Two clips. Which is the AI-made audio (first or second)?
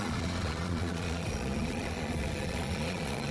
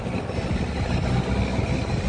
first